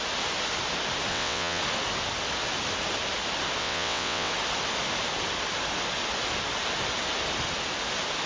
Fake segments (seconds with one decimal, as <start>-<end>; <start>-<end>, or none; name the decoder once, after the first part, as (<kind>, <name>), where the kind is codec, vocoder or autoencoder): 1.1-1.6 (vocoder, WaveNeXt); 3.6-4.3